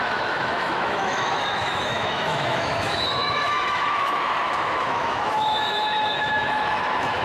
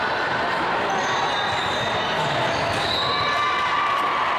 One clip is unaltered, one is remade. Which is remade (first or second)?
first